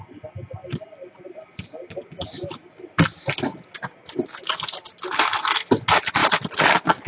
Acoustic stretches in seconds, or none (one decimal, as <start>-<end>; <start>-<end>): 0.0-7.1